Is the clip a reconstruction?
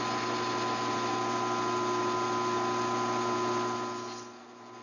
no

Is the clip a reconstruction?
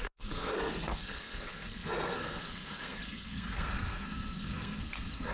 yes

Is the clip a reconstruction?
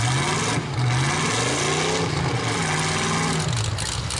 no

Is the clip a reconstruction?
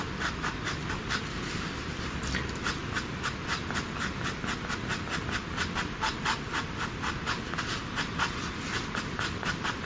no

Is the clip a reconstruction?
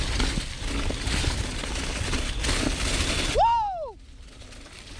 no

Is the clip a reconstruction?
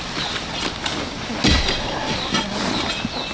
no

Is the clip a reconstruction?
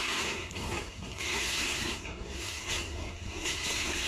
yes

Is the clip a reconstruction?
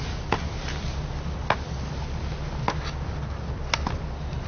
no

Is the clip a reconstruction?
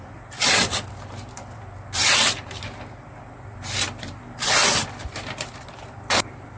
yes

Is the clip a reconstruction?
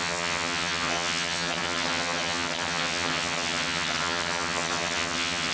yes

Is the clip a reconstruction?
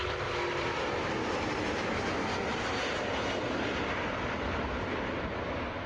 no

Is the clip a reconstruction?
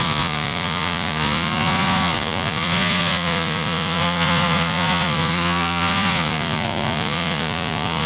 yes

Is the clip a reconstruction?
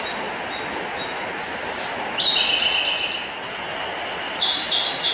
no